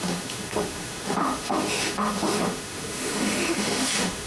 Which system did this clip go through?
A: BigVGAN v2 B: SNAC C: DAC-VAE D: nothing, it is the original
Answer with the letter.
C